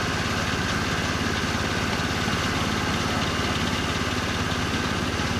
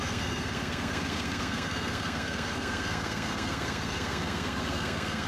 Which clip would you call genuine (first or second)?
first